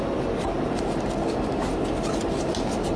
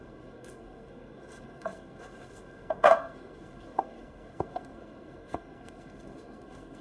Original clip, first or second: first